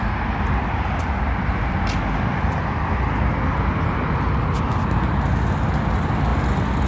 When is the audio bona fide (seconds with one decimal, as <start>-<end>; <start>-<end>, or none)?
0.0-6.9